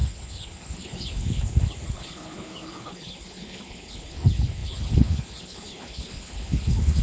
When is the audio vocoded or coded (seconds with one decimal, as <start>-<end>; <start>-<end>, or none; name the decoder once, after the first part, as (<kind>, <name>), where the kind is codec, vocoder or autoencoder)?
0.0-7.0 (codec, HILCodec)